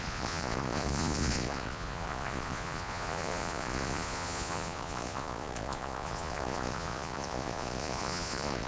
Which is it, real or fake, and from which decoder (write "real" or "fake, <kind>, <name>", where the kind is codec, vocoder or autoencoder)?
fake, vocoder, Vocos